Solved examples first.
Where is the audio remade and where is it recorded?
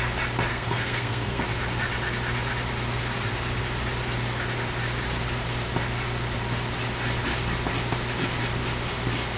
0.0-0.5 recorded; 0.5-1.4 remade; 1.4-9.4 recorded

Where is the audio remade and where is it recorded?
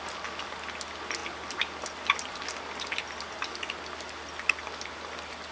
0.0-5.5 recorded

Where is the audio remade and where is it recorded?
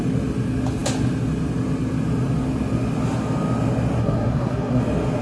0.0-4.0 recorded; 4.0-4.8 remade; 4.8-5.2 recorded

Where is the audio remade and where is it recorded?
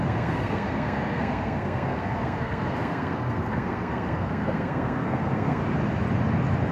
0.0-5.6 remade; 5.6-6.7 recorded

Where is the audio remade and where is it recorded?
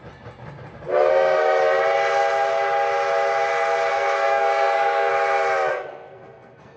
0.0-0.9 recorded; 0.9-1.6 remade; 1.6-3.9 recorded; 3.9-5.1 remade; 5.1-5.7 recorded; 5.7-6.8 remade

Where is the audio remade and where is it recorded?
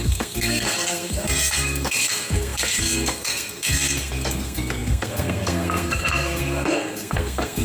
0.0-7.6 remade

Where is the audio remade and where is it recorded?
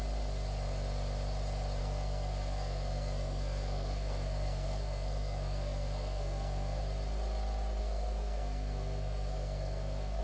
0.0-1.8 recorded; 1.8-6.8 remade; 6.8-7.8 recorded; 7.8-10.2 remade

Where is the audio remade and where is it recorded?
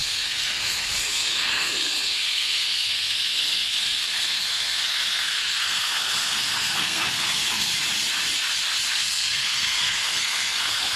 0.0-7.7 remade; 7.7-8.9 recorded; 8.9-11.0 remade